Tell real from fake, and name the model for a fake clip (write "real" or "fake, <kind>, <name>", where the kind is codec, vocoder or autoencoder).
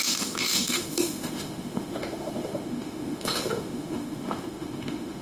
fake, autoencoder, DAC-VAE